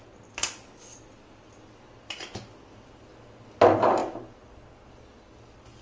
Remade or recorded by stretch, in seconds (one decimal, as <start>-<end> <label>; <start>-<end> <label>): 0.0-5.8 recorded